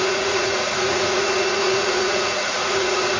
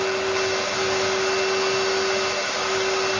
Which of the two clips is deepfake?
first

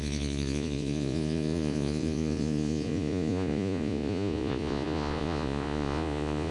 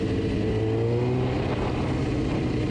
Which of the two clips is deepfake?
first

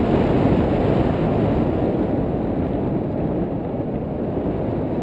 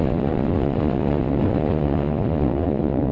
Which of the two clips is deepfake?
second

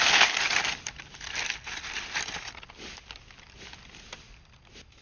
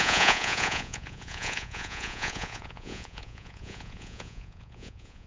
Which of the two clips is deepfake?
second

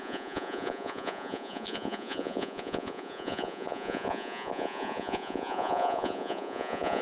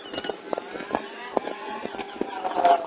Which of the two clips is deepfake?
first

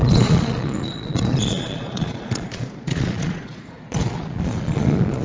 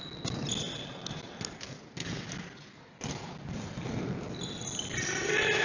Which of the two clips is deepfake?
first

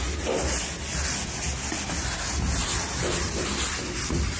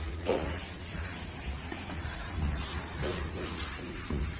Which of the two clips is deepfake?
second